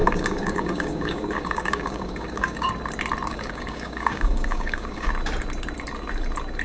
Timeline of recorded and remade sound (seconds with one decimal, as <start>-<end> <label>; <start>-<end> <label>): 0.0-2.7 remade; 2.7-3.3 recorded; 3.3-5.1 remade; 5.1-6.6 recorded